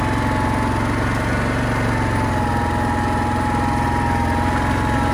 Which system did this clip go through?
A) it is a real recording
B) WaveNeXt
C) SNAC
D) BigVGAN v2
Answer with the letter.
A